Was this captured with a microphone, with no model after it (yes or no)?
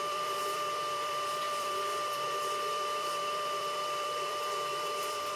no